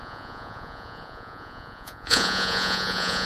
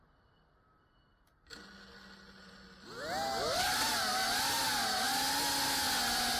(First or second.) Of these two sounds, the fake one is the first